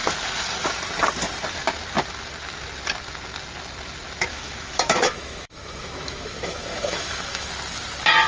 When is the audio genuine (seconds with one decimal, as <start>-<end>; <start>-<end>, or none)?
0.0-4.3; 7.5-8.3